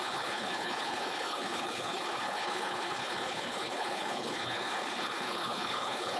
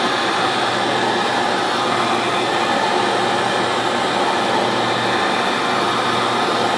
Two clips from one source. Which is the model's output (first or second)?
first